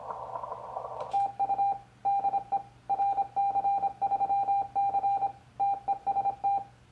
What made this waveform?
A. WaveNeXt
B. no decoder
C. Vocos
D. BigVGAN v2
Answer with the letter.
B